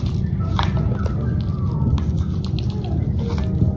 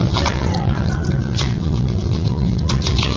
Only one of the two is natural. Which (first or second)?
first